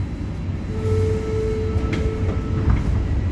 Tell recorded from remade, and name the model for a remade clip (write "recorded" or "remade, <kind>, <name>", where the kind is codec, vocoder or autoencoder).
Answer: recorded